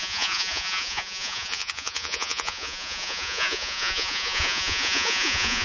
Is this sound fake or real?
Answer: fake